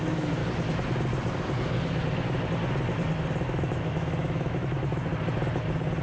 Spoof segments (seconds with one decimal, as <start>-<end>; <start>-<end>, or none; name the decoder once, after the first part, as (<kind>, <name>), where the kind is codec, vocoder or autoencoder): 0.0-0.4 (autoencoder, DAC-VAE); 3.4-5.1